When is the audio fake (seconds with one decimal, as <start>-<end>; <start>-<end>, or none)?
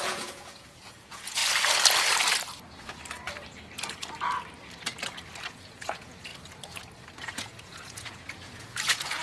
0.0-1.4; 5.5-6.3; 7.3-9.2